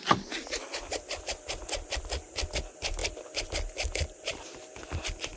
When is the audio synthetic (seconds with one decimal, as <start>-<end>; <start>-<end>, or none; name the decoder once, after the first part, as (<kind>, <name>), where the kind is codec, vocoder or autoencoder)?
none

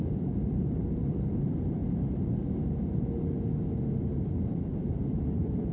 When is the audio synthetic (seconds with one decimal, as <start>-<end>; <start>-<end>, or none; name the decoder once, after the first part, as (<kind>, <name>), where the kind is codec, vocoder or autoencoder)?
0.0-1.8 (vocoder, BigVGAN v2); 5.2-5.7

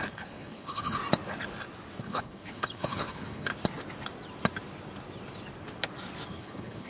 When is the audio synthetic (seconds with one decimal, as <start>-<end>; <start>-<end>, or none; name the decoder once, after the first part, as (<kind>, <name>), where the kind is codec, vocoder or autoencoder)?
0.0-1.0 (codec, HILCodec); 2.0-3.5; 6.3-6.9

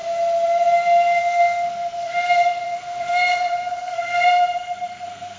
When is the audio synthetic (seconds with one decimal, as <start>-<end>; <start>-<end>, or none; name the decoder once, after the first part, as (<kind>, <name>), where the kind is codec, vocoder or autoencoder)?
1.2-5.4 (codec, SNAC)

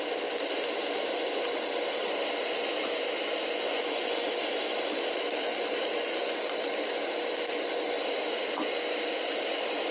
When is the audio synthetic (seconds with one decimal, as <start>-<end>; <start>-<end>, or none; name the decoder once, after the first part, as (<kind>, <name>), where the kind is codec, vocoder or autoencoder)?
3.4-4.2 (vocoder, Vocos)

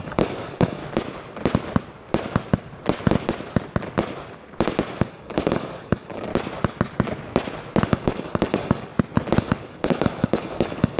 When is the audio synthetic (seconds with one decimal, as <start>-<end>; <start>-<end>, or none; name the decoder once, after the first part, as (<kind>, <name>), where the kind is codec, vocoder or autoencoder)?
0.0-0.8 (codec, DAC); 5.0-6.3; 7.9-8.9; 9.4-11.0